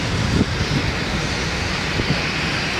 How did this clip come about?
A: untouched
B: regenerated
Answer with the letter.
A